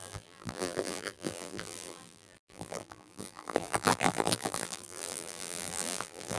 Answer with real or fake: fake